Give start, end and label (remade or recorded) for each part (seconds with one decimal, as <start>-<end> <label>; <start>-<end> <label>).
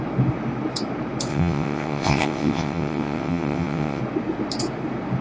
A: 0.0-1.3 recorded; 1.3-4.0 remade; 4.0-5.2 recorded